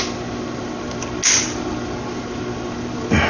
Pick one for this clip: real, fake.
real